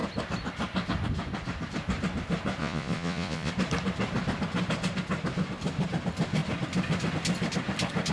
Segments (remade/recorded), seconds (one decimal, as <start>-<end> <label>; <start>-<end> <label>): 0.0-2.6 recorded; 2.6-3.5 remade; 3.5-8.1 recorded